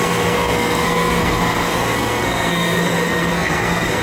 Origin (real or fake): fake